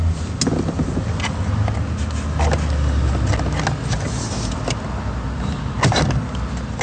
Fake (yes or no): no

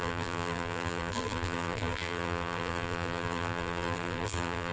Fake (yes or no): yes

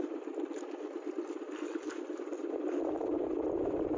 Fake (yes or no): no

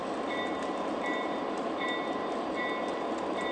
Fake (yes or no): no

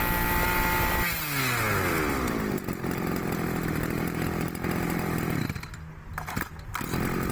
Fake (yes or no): no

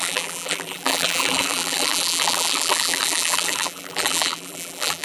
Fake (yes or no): yes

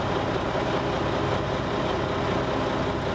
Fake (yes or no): no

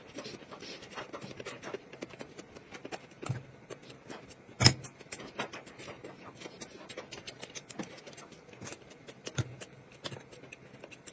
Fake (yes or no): yes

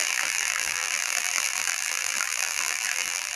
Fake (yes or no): yes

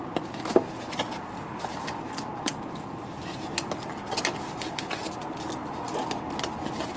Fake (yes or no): no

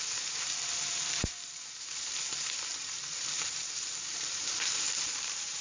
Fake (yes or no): yes